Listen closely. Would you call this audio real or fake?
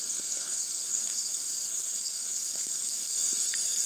fake